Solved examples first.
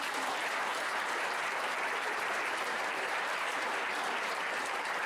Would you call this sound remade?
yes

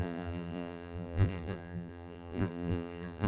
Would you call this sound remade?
yes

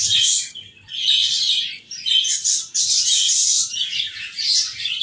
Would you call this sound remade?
no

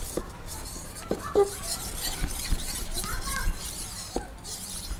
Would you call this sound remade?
yes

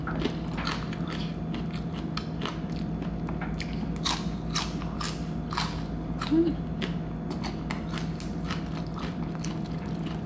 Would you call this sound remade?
no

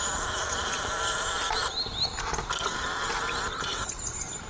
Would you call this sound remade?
no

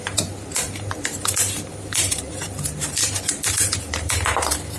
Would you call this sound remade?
yes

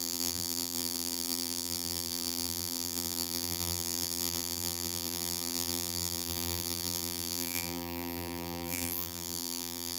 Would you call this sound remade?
yes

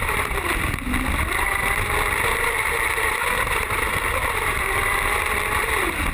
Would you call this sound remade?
yes